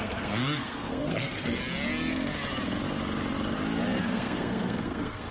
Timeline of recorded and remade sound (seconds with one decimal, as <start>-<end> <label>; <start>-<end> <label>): 0.0-1.6 remade; 1.6-4.0 recorded; 4.0-5.3 remade